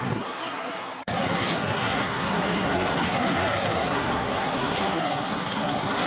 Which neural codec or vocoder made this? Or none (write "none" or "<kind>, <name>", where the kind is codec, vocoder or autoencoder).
codec, SNAC